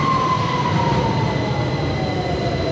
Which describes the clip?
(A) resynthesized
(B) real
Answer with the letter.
B